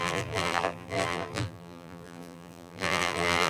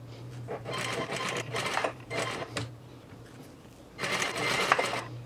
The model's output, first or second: first